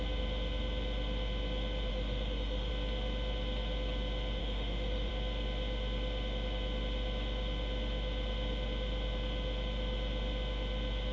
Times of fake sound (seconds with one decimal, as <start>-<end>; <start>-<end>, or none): 1.9-2.7; 4.4-5.1